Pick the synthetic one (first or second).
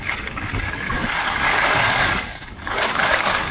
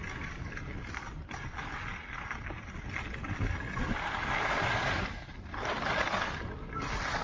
first